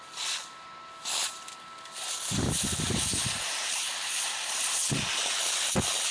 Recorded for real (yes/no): yes